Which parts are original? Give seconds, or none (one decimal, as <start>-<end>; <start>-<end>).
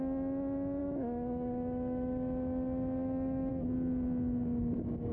0.0-0.8; 3.5-5.1